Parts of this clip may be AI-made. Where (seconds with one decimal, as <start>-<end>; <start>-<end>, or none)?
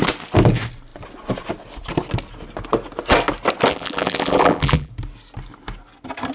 3.7-4.9